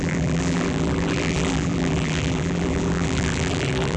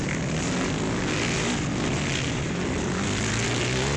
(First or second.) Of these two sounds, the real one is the second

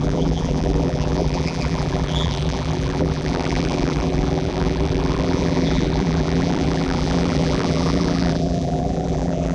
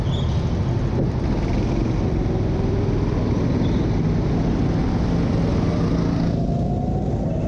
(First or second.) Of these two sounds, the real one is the second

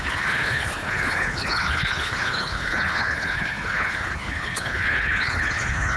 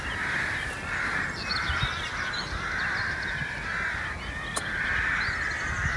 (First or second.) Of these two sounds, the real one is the second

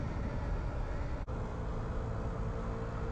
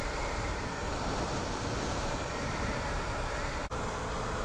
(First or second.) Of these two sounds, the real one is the first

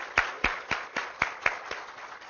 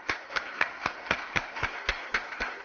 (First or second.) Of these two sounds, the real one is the first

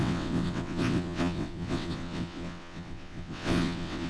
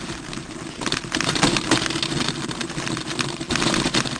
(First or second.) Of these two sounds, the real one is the second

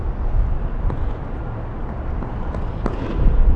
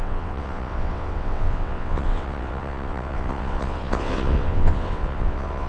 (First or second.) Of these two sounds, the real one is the first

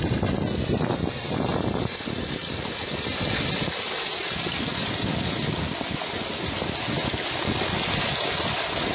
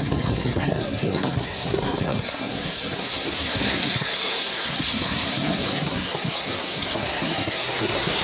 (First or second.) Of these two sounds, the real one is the first